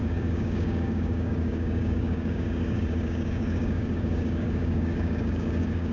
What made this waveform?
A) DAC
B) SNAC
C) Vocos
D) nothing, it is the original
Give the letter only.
A